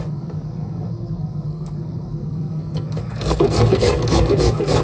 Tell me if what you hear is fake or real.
fake